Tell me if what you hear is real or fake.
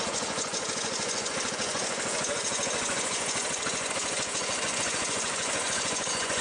fake